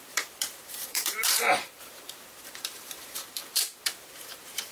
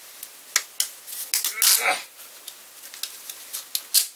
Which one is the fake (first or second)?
first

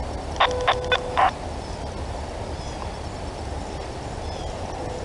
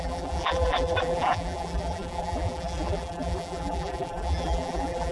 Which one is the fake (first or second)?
second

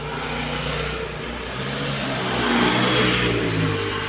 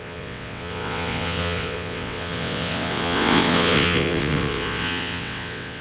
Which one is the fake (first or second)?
second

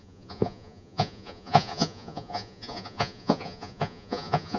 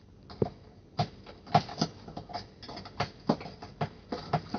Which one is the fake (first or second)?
first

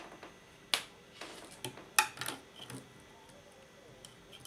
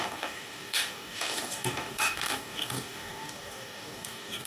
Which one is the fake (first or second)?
second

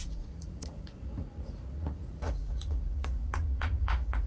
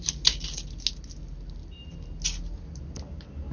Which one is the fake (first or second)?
first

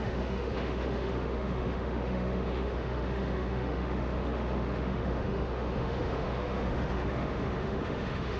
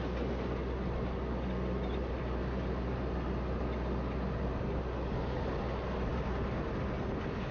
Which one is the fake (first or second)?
first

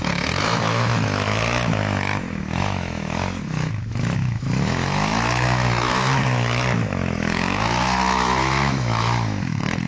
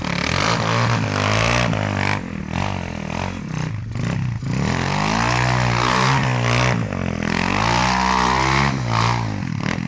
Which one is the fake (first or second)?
first